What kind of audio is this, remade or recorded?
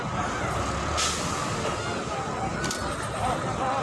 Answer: recorded